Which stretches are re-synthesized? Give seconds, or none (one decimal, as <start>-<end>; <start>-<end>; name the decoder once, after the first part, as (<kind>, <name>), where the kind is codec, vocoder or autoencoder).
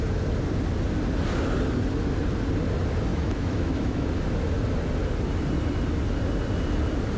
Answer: 3.1-4.1 (autoencoder, DAC-VAE)